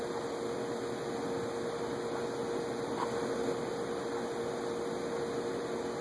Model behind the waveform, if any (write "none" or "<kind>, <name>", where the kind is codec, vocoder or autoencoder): none